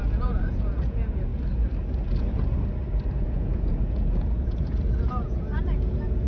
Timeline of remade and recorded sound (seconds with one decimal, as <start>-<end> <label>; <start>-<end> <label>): 0.0-1.3 remade; 1.3-3.1 recorded; 3.1-6.3 remade

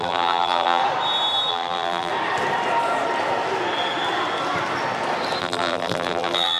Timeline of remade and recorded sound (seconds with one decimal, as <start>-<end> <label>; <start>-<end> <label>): 0.0-0.8 remade; 0.8-1.5 recorded; 1.5-2.1 remade; 2.1-5.4 recorded; 5.4-6.6 remade